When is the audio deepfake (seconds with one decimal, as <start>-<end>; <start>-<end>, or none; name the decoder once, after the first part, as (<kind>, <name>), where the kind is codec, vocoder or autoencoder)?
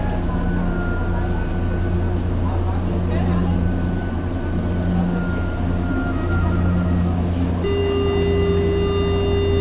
3.4-4.6 (vocoder, BigVGAN v2)